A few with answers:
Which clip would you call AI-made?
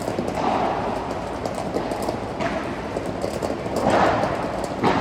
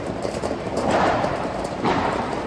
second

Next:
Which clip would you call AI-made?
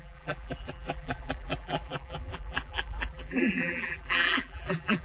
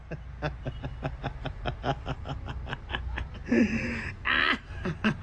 first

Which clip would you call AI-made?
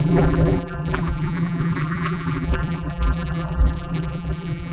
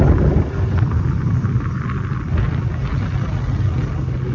first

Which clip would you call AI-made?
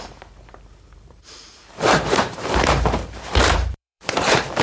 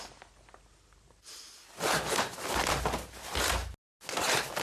first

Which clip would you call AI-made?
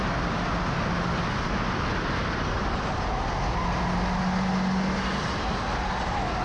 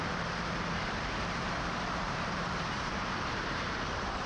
second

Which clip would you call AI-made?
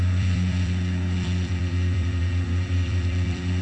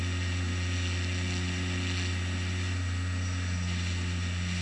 first